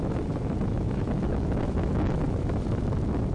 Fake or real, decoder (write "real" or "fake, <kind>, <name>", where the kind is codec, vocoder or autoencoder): fake, autoencoder, DAC-VAE